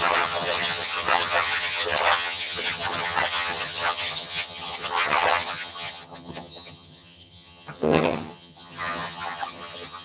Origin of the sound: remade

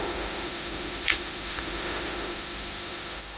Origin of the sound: remade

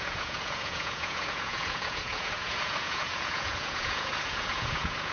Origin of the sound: remade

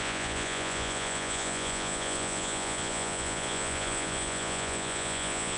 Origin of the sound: remade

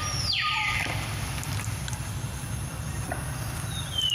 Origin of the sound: recorded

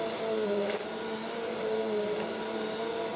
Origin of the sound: recorded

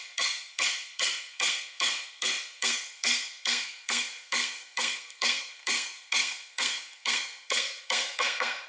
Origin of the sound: remade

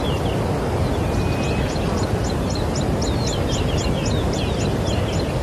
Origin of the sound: recorded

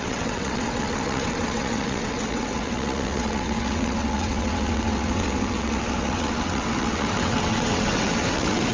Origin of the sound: remade